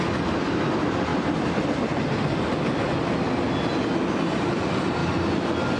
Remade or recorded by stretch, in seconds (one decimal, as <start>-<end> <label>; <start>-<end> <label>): 0.0-5.8 recorded